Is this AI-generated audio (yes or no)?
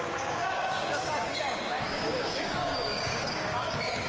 yes